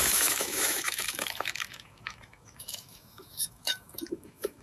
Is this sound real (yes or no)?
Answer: no